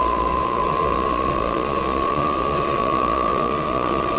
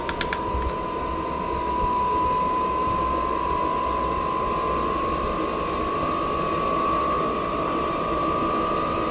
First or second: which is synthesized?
first